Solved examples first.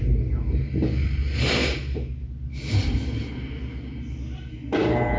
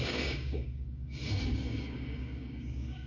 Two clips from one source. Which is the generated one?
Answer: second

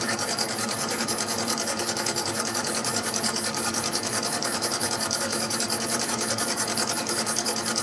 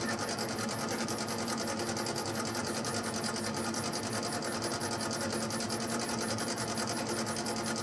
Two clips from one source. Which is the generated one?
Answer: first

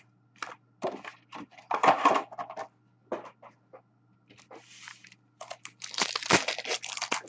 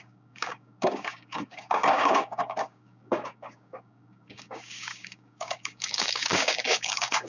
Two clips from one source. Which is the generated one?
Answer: second